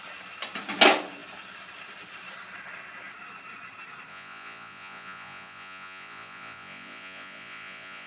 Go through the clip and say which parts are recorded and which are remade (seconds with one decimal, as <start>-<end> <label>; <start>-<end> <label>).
0.0-4.1 recorded; 4.1-8.1 remade